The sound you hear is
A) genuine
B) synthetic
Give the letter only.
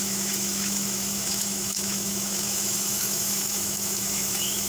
B